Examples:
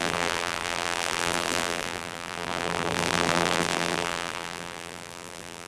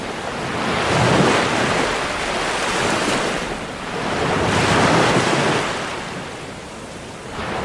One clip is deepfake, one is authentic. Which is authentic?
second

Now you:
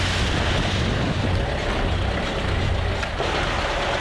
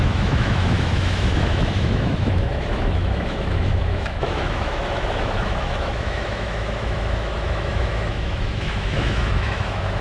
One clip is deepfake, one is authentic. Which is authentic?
first